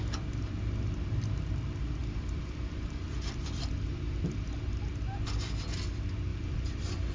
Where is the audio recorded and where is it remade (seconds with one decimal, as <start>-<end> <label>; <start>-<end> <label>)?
0.0-2.0 recorded; 2.0-4.9 remade; 4.9-6.3 recorded; 6.3-7.1 remade